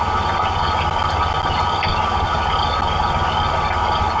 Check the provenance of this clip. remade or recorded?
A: recorded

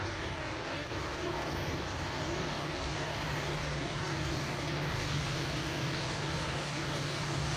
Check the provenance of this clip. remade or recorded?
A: remade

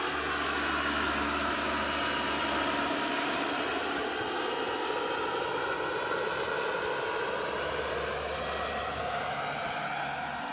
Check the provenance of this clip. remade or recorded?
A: recorded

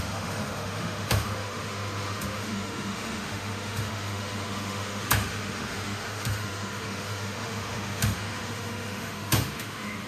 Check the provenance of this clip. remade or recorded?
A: remade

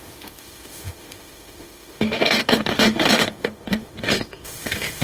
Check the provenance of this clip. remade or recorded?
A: remade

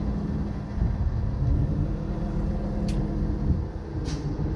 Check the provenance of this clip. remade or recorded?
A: recorded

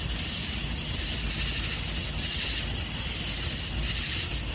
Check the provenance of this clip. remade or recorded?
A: recorded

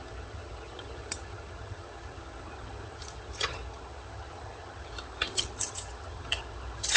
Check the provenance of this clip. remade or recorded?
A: remade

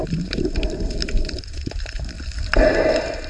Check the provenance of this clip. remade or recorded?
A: remade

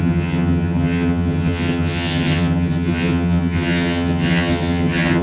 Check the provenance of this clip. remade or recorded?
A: remade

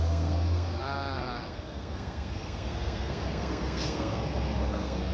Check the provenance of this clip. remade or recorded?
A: remade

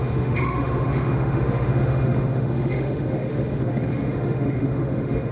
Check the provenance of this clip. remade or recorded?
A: remade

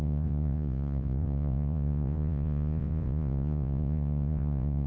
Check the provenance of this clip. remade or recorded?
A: remade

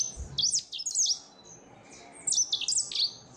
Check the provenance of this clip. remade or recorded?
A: recorded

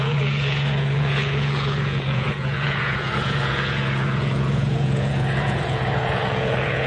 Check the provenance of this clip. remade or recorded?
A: remade